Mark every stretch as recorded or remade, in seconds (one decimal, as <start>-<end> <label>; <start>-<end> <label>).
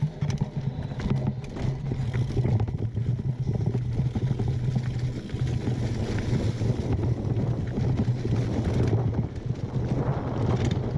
0.0-11.0 recorded